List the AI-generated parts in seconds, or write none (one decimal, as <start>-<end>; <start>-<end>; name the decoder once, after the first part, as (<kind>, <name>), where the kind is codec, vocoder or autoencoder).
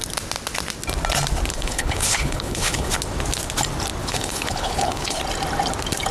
1.5-2.9 (codec, HILCodec); 4.0-5.2